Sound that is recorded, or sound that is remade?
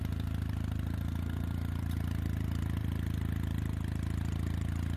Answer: recorded